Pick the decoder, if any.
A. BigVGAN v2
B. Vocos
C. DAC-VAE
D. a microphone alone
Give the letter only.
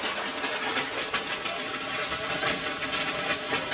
D